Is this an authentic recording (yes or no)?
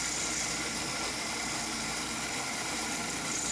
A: yes